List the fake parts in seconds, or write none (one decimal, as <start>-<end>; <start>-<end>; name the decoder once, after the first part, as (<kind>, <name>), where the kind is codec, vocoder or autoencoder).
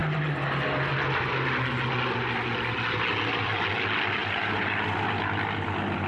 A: 4.2-4.8 (vocoder, BigVGAN v2)